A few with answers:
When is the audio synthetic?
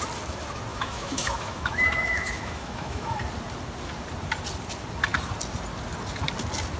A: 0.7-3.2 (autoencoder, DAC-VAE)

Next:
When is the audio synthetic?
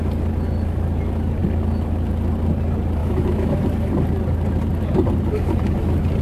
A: 3.0-3.6 (autoencoder, DAC-VAE)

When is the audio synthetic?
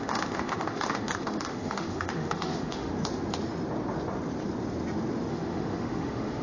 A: 0.0-2.9 (autoencoder, DAC-VAE); 5.3-6.4